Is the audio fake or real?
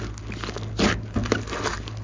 real